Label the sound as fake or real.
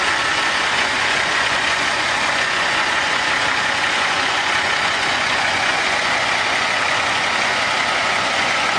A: fake